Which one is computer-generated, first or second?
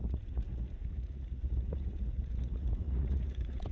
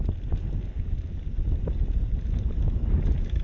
first